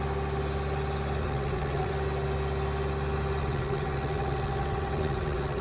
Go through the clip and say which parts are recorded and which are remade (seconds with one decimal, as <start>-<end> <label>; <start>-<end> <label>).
0.0-1.2 recorded; 1.2-1.9 remade; 1.9-3.4 recorded; 3.4-5.6 remade